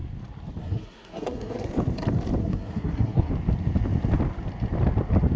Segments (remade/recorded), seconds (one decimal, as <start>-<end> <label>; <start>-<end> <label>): 0.0-0.6 recorded; 0.6-1.7 remade; 1.7-2.4 recorded; 2.4-3.3 remade; 3.3-5.4 recorded